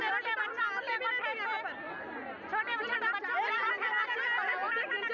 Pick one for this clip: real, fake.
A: real